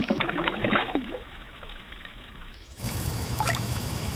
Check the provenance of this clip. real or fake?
fake